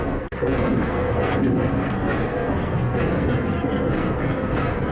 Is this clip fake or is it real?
fake